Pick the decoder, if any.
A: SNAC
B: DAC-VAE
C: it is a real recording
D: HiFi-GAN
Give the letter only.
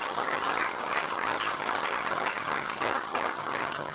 D